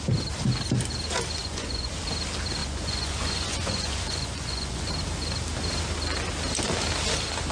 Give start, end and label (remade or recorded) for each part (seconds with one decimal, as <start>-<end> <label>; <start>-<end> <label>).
0.0-1.4 recorded; 1.4-1.9 remade; 1.9-2.6 recorded; 2.6-4.9 remade; 4.9-7.5 recorded